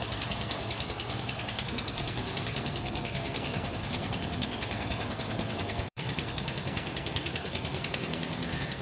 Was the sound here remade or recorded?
remade